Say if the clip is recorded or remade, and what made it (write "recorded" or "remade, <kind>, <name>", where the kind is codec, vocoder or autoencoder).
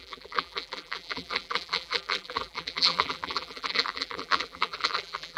remade, vocoder, BigVGAN v2